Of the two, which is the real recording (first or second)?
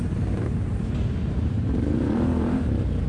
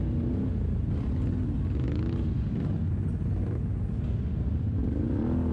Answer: second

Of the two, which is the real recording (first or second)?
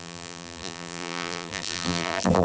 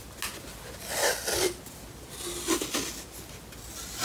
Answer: second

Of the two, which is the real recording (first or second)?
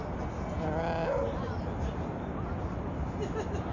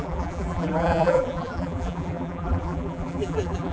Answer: first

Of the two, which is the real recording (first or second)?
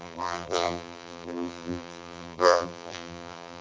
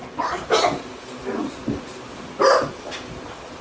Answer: second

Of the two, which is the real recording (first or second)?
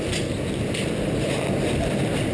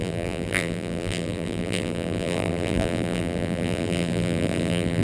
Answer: first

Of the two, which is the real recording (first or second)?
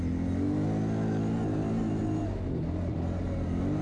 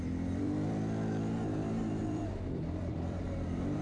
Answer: first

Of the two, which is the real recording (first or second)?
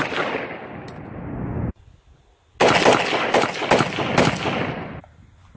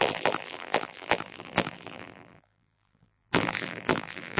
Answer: first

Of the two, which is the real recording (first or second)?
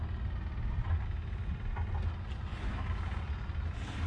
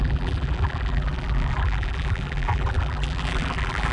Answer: first